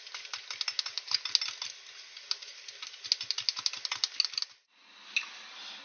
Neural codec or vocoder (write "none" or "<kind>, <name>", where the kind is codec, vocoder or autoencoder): none